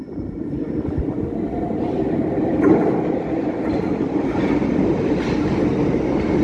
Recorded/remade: recorded